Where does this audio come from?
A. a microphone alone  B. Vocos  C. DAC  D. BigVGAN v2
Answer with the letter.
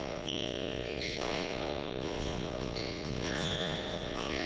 B